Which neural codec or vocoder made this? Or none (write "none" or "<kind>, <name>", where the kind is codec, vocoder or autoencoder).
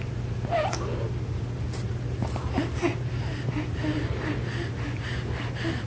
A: none